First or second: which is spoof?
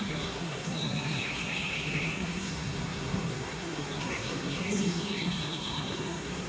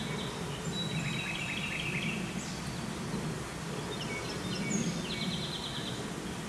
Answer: first